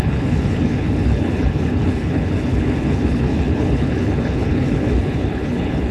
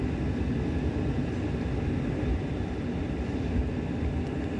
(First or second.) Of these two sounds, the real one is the second